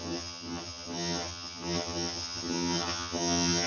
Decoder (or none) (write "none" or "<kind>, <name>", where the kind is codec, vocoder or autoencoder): vocoder, HiFi-GAN